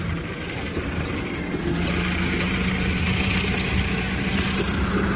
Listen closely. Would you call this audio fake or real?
real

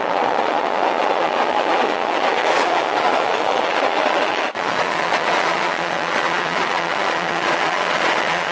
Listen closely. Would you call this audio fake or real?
fake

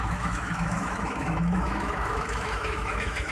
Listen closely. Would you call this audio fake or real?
fake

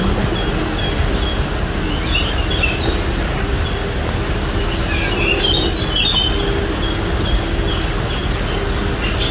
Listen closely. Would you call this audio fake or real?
real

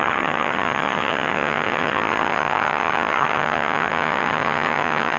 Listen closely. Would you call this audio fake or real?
fake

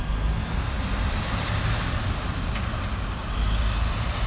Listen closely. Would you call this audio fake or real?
real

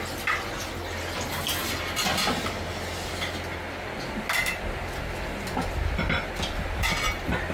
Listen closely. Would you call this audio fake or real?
real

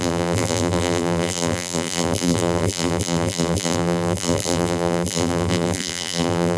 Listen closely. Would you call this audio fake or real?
fake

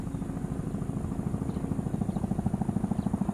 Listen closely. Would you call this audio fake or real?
real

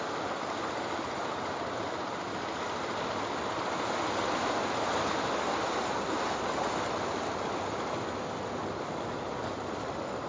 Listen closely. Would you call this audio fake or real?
real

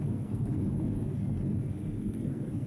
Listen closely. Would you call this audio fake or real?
fake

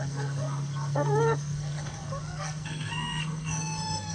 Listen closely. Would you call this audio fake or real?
fake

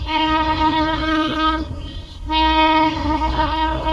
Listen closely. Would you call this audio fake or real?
fake